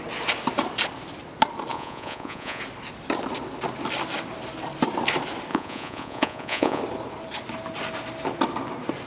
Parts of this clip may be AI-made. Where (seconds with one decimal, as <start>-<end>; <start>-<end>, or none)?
1.7-2.6; 5.5-6.8